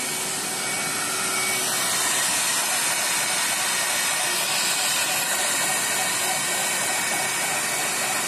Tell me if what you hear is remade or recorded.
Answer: recorded